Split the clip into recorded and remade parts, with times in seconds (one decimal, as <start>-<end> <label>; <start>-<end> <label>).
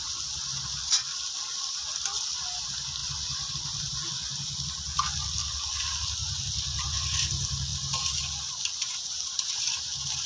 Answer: 0.0-10.3 recorded